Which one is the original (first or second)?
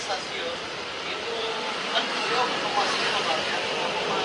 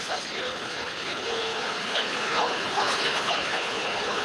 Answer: first